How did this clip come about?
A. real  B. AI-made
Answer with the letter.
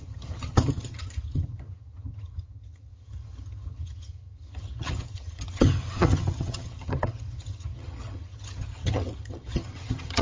B